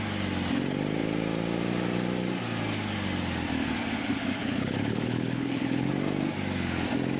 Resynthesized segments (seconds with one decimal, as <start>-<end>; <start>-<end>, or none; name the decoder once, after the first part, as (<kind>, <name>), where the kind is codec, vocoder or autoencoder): 4.4-5.9 (codec, HILCodec)